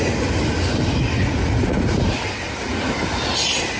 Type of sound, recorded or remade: recorded